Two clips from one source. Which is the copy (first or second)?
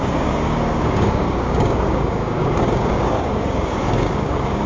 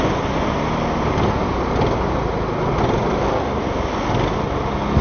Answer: first